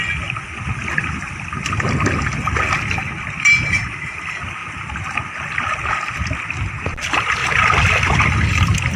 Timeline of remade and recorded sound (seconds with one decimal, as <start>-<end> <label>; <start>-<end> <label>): 0.0-7.4 recorded; 7.4-8.2 remade; 8.2-9.0 recorded